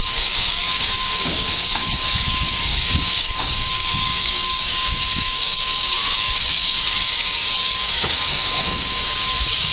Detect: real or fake fake